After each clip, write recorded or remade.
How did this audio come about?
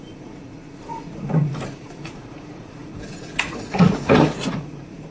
remade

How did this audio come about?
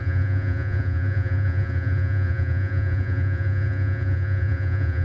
remade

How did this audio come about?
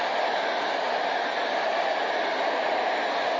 recorded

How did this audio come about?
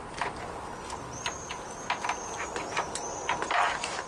recorded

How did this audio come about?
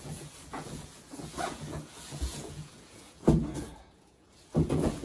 remade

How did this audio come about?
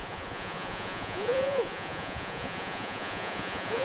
remade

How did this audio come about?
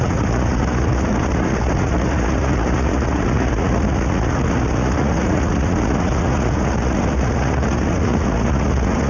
remade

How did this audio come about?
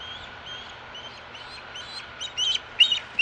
recorded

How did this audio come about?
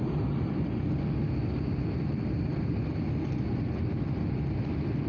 recorded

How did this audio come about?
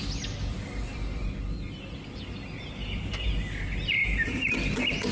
recorded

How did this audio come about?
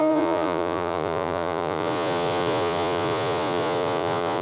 remade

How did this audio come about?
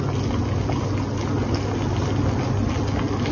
recorded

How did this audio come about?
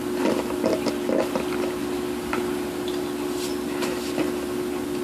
recorded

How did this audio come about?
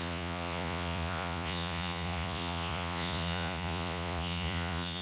remade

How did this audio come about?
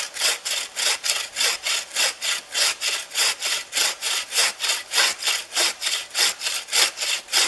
recorded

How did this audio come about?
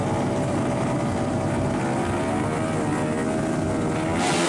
recorded